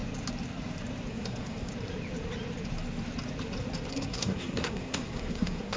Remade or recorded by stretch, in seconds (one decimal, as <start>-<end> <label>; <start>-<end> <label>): 0.0-1.1 recorded; 1.1-1.7 remade; 1.7-3.9 recorded; 3.9-5.8 remade